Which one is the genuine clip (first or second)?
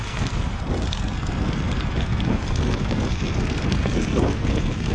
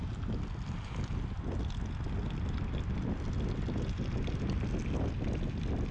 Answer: second